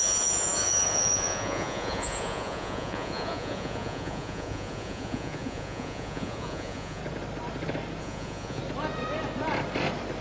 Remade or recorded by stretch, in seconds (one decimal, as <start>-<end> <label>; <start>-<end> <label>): 0.0-7.0 remade; 7.0-8.0 recorded; 8.0-8.6 remade; 8.6-10.2 recorded